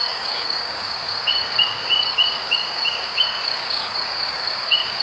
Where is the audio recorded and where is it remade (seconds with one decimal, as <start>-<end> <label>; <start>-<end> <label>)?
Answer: 0.0-5.0 remade